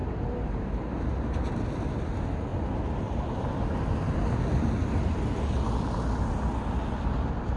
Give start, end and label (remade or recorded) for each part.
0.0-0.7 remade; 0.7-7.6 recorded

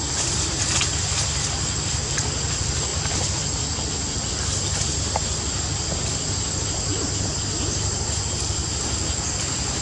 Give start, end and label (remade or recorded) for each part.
0.0-6.9 remade; 6.9-7.4 recorded; 7.4-9.8 remade

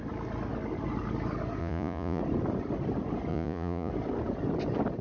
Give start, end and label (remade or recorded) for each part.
0.0-1.6 recorded; 1.6-2.2 remade; 2.2-3.3 recorded; 3.3-3.9 remade; 3.9-5.0 recorded

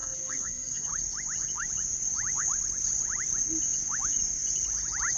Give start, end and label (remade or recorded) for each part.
0.0-0.9 remade; 0.9-5.2 recorded

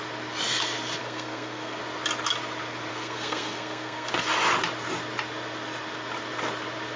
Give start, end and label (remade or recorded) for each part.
0.0-1.0 recorded; 1.0-1.8 remade; 1.8-2.9 recorded; 2.9-4.1 remade; 4.1-7.0 recorded

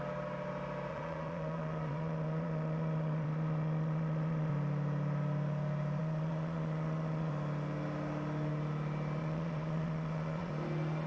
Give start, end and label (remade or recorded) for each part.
0.0-0.9 recorded; 0.9-4.5 remade; 4.5-6.0 recorded; 6.0-7.3 remade; 7.3-9.2 recorded; 9.2-10.5 remade; 10.5-11.1 recorded

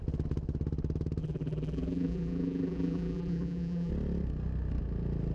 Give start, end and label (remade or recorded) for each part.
0.0-1.2 recorded; 1.2-3.9 remade; 3.9-5.3 recorded